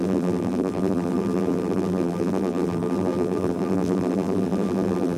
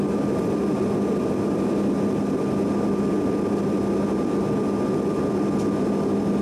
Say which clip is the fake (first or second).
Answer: first